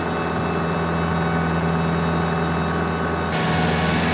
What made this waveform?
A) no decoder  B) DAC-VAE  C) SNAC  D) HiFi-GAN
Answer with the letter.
A